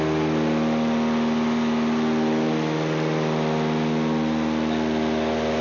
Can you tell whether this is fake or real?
real